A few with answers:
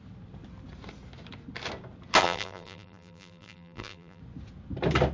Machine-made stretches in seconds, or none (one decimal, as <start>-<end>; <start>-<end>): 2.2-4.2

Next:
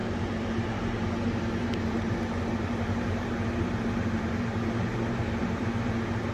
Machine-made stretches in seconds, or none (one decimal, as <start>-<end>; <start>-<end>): 0.0-6.3

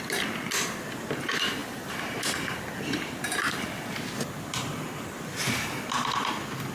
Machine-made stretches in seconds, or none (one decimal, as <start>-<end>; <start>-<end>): 1.6-5.3